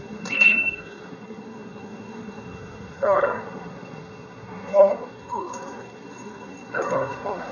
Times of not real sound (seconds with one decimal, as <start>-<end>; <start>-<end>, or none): 0.0-7.5